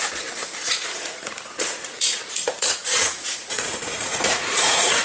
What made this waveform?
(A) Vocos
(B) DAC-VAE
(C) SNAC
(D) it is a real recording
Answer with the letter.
A